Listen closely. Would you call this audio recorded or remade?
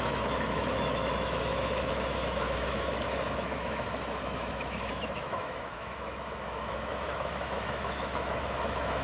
remade